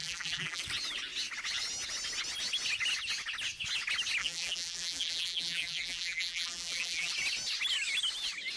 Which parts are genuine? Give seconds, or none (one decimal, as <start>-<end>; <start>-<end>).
0.6-4.2; 7.1-8.6

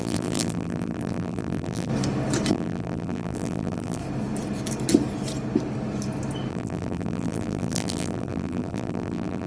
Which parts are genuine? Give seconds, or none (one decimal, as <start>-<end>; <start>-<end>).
1.9-2.5; 4.0-6.5

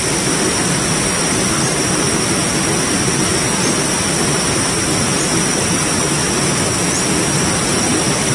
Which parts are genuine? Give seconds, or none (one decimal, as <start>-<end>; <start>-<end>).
1.7-5.0; 6.2-8.3

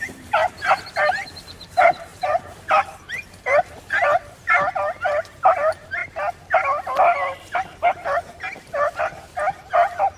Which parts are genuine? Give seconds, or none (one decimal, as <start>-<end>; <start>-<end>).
6.0-9.7

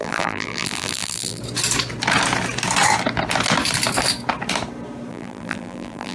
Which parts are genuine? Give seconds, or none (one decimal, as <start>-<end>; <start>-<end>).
1.4-5.1